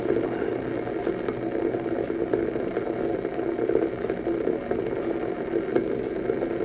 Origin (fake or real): real